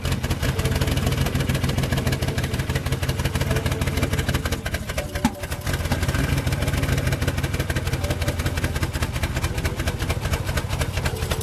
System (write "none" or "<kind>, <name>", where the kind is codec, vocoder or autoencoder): none